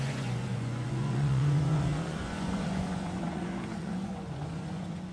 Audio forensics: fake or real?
fake